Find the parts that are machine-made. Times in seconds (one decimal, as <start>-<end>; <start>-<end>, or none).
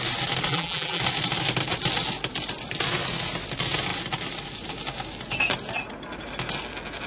0.5-1.0